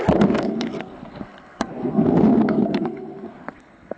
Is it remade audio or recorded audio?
remade